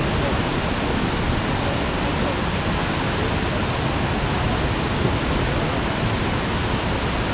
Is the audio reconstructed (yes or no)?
no